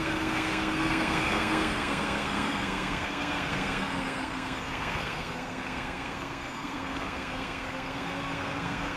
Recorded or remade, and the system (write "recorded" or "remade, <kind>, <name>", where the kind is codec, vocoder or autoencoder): remade, codec, SNAC